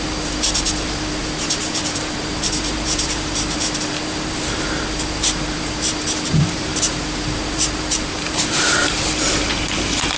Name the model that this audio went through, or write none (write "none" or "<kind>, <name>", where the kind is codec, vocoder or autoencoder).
vocoder, BigVGAN v2